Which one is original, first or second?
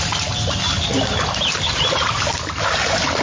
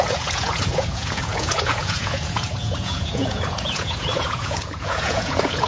first